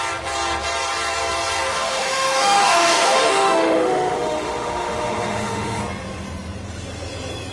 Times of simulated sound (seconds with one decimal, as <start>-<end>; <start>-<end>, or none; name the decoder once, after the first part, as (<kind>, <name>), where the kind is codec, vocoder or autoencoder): 1.7-5.8 (autoencoder, DAC-VAE)